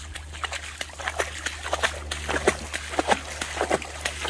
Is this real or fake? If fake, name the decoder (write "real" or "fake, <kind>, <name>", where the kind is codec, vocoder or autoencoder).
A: real